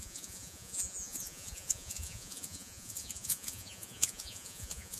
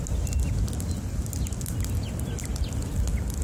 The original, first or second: second